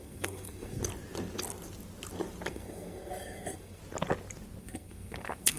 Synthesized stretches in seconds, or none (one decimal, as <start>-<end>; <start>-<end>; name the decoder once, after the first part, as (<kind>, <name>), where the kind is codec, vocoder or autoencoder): 0.0-0.8 (codec, SNAC); 2.5-3.8; 4.6-5.6